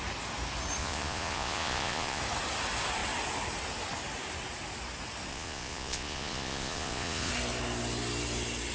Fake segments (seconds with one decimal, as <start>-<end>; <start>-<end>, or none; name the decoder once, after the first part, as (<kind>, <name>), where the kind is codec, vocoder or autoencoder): 0.8-2.2 (vocoder, Vocos); 5.3-7.3